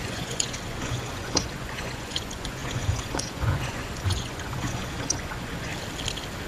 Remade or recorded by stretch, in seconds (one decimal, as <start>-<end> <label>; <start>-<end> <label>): 0.0-5.7 remade; 5.7-6.5 recorded

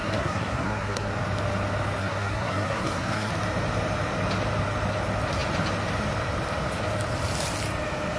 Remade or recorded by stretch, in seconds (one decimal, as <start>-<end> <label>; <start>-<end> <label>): 0.0-1.1 remade; 1.1-2.0 recorded; 2.0-3.3 remade; 3.3-8.2 recorded

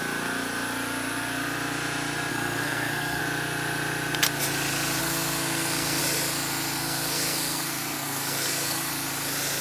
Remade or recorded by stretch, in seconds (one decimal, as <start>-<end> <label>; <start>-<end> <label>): 0.0-2.3 recorded; 2.3-3.2 remade; 3.2-5.0 recorded; 5.0-6.0 remade; 6.0-6.8 recorded; 6.8-8.9 remade; 8.9-9.6 recorded

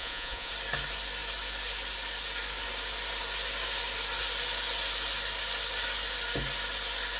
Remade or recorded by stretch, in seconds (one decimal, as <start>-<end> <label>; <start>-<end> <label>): 0.0-0.5 remade; 0.5-7.2 recorded

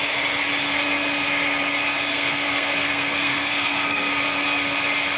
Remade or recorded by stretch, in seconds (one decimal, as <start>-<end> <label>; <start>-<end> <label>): 0.0-2.1 recorded; 2.1-4.1 remade; 4.1-5.2 recorded

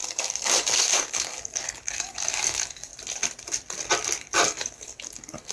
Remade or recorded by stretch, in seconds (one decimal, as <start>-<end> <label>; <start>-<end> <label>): 0.0-2.9 remade; 2.9-4.2 recorded; 4.2-5.5 remade

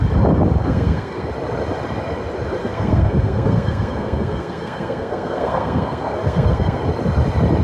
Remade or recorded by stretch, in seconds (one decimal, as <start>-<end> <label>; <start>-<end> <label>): 0.0-0.6 recorded; 0.6-1.3 remade; 1.3-2.6 recorded; 2.6-6.8 remade; 6.8-7.6 recorded

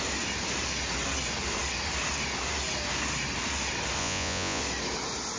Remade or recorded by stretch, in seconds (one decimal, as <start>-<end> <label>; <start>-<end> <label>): 0.0-4.0 recorded; 4.0-4.6 remade; 4.6-5.4 recorded